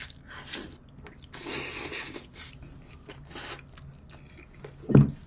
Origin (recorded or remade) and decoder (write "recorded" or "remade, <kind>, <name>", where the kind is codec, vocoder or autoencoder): recorded